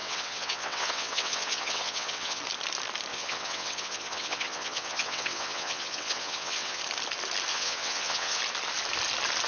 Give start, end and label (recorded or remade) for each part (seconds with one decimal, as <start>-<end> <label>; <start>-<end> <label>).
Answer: 0.0-2.4 remade; 2.4-3.1 recorded; 3.1-6.8 remade; 6.8-7.5 recorded; 7.5-8.4 remade; 8.4-9.5 recorded